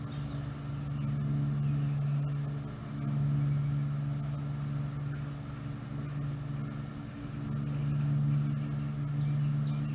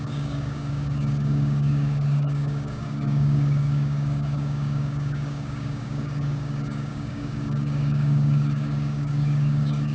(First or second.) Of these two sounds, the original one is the first